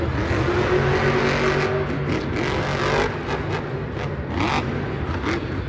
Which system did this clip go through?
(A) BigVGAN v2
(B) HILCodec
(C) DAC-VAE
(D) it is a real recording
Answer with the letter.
D